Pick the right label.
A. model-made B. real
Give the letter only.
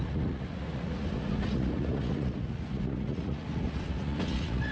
A